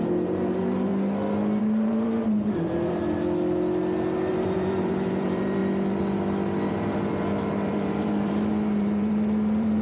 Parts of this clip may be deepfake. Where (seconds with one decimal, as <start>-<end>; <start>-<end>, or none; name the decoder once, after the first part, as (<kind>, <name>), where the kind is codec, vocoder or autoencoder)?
0.0-0.9 (vocoder, BigVGAN v2); 1.6-3.0; 4.3-5.6; 6.7-9.8